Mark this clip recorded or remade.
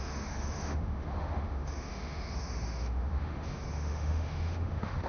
remade